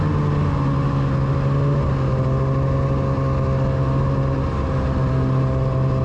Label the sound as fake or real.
real